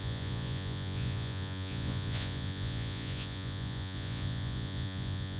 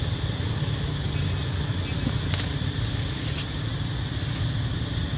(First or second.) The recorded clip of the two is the second